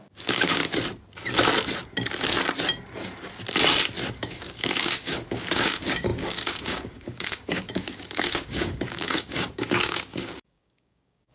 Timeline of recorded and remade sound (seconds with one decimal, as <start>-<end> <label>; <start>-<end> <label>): 0.0-0.6 remade; 0.6-4.1 recorded; 4.1-11.3 remade